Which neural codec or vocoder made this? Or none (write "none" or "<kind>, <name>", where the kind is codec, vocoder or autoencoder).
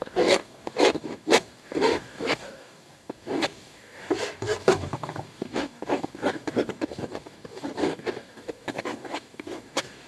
codec, DAC